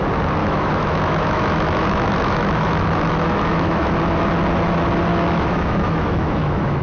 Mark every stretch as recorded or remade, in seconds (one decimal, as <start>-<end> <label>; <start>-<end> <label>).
0.0-0.4 recorded; 0.4-3.9 remade; 3.9-5.1 recorded; 5.1-6.8 remade